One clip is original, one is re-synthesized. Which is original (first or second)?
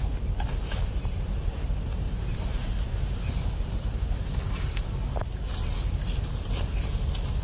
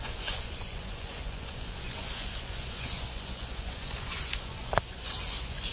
first